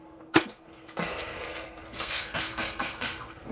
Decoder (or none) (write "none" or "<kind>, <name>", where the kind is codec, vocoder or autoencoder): codec, SNAC